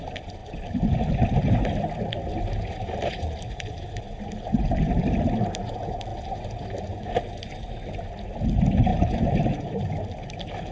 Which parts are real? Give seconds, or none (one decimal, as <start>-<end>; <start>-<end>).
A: 0.0-8.9; 9.9-10.7